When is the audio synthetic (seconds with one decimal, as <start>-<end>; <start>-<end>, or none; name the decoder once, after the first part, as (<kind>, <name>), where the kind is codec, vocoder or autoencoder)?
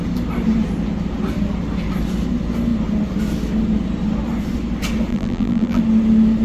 5.1-5.8 (vocoder, BigVGAN v2)